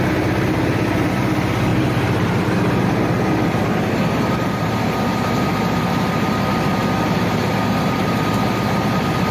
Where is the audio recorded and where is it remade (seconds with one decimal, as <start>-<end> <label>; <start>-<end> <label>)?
0.0-1.7 recorded; 1.7-4.9 remade; 4.9-9.3 recorded